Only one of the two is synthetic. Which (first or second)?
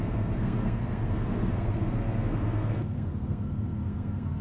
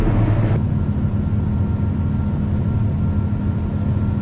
first